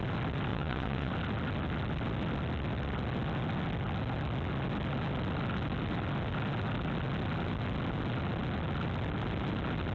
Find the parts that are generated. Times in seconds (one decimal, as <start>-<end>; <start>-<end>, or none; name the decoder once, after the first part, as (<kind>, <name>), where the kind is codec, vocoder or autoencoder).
0.5-1.1 (vocoder, WaveNeXt)